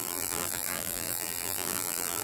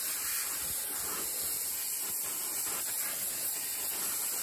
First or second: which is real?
second